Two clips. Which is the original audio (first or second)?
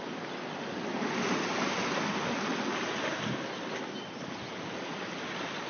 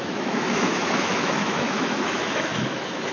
first